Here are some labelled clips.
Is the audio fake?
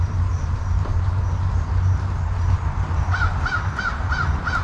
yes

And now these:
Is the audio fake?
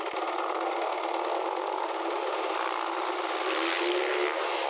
no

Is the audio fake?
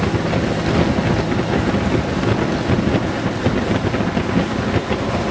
no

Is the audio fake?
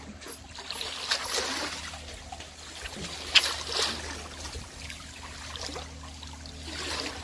no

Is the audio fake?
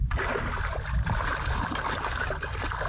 no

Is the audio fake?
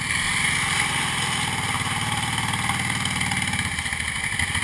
no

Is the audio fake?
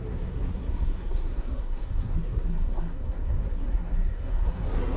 yes